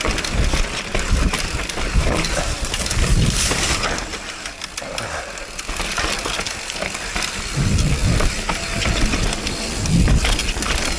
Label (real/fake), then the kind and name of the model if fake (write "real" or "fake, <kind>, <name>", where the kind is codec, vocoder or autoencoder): real